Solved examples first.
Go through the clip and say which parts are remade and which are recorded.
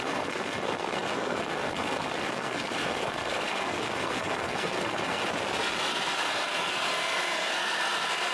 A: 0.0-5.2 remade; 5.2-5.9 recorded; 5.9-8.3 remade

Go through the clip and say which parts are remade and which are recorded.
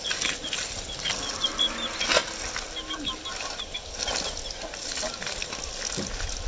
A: 0.0-6.5 recorded